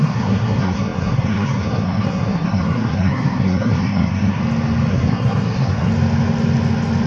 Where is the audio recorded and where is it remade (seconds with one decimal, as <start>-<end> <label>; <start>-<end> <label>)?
0.0-4.4 remade; 4.4-4.9 recorded; 4.9-5.9 remade; 5.9-7.1 recorded